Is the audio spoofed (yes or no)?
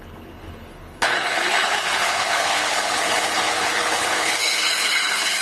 yes